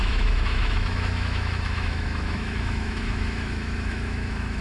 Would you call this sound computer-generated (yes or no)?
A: yes